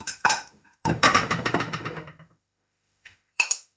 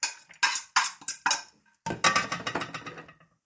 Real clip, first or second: second